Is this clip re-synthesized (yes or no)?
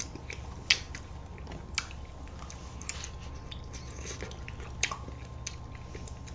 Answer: no